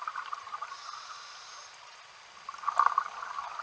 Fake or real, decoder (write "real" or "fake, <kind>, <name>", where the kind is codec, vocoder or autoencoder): real